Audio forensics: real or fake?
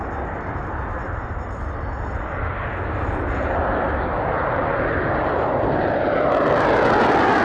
real